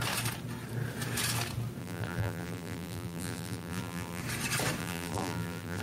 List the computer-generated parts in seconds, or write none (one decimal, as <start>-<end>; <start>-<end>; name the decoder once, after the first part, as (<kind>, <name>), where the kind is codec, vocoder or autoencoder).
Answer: 1.8-4.2 (vocoder, BigVGAN v2); 4.8-5.8